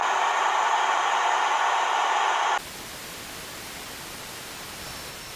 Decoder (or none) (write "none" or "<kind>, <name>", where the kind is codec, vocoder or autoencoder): none